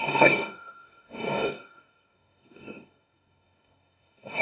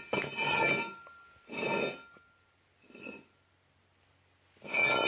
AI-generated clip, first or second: first